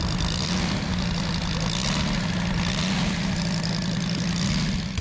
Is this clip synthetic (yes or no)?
no